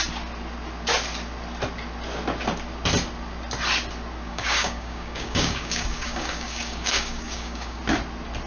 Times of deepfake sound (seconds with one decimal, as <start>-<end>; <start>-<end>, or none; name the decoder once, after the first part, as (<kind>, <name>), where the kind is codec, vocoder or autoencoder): 4.3-7.8 (codec, DAC)